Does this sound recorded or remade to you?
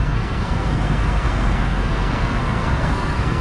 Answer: remade